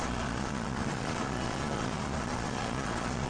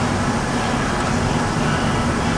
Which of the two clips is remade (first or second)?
first